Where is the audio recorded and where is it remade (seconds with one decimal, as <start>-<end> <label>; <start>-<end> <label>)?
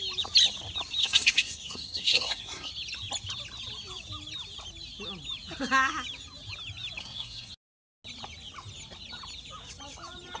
0.0-1.0 recorded; 1.0-2.7 remade; 2.7-7.0 recorded; 7.0-7.5 remade; 7.5-10.4 recorded